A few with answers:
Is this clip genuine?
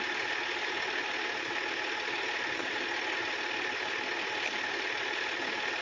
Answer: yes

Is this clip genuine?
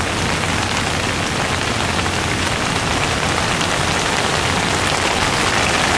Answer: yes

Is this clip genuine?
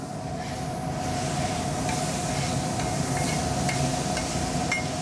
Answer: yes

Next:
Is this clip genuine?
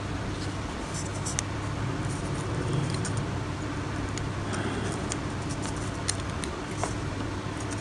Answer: yes